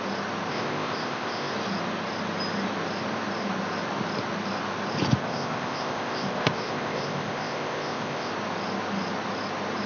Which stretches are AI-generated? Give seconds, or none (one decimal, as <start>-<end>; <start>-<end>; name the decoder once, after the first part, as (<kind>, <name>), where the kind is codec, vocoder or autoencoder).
0.5-1.5 (codec, ZipCodec); 5.2-8.3